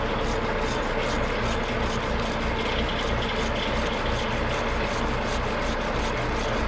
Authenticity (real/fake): real